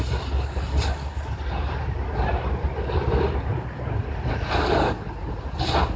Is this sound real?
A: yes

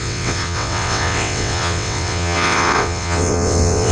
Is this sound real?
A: no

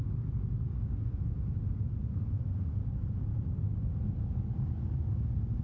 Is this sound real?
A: yes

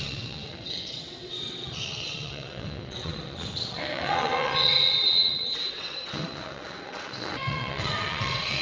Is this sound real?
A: no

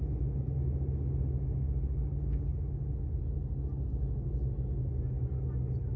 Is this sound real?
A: yes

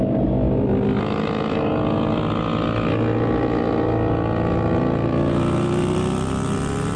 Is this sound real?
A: yes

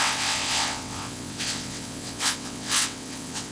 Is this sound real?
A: no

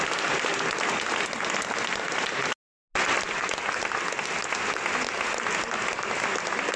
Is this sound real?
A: yes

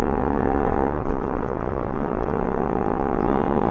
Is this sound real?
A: no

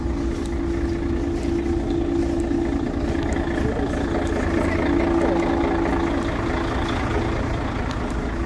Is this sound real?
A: yes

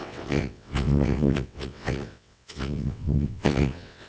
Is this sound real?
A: no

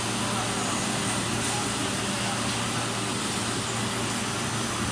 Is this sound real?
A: yes